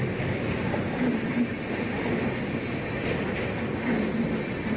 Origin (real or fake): real